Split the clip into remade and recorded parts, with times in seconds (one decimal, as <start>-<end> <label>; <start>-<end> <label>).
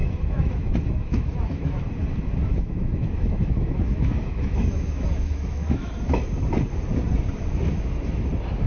0.0-1.9 remade; 1.9-2.5 recorded; 2.5-5.9 remade; 5.9-8.7 recorded